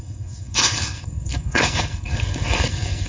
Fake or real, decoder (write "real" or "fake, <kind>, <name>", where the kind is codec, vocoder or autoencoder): fake, codec, SNAC